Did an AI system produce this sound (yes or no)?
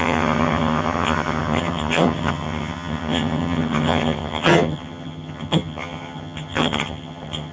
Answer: yes